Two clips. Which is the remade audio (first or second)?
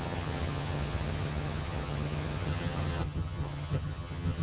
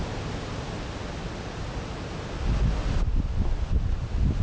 first